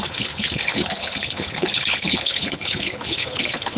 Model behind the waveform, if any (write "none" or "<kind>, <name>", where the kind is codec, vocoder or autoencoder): codec, HILCodec